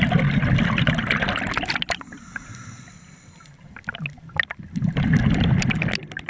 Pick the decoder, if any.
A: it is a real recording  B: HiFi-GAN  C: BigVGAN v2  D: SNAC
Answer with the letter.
A